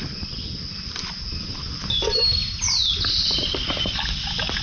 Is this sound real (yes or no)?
yes